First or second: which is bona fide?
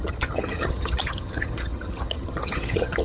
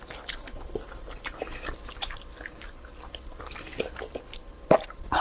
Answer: second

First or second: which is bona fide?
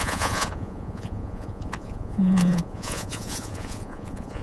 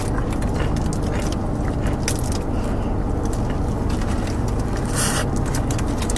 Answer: second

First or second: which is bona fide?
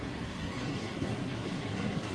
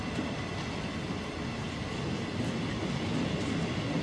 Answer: second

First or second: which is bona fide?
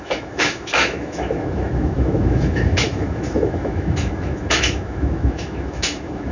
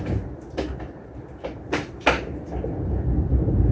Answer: second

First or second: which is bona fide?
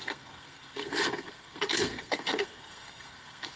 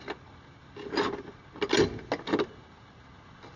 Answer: second